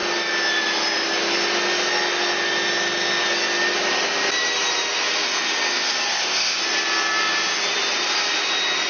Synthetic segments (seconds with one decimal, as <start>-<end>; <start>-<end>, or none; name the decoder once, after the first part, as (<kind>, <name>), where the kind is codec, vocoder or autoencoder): 6.1-6.6 (codec, ZipCodec)